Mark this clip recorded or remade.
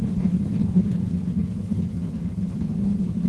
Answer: remade